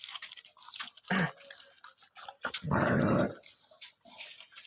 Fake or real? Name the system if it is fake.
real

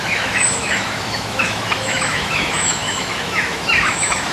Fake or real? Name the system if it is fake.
fake, autoencoder, DAC-VAE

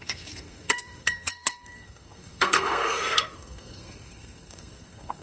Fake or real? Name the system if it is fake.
fake, codec, SNAC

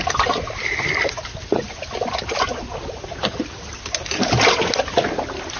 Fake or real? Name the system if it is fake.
real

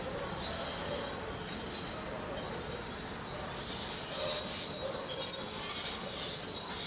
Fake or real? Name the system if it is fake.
real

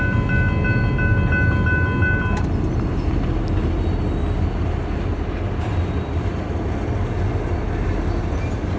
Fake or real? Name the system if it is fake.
real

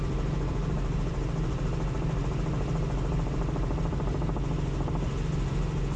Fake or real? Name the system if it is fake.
real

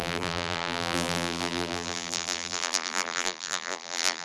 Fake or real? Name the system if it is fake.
fake, vocoder, BigVGAN v2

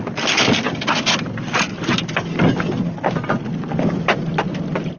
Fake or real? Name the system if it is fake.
real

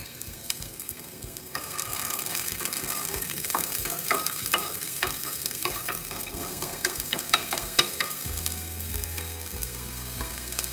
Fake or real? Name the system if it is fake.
fake, codec, SNAC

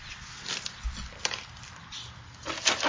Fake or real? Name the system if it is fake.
real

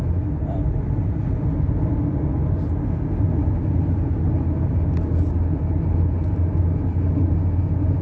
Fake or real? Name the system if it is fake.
real